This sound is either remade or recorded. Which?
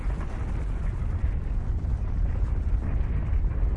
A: recorded